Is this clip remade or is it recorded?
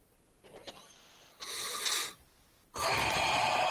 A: recorded